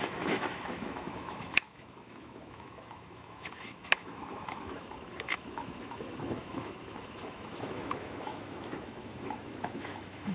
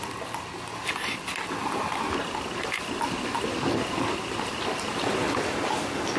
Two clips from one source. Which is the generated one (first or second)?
first